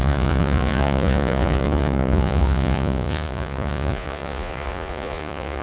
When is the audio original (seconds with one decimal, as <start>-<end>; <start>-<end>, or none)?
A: none